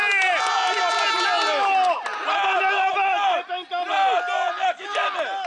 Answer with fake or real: real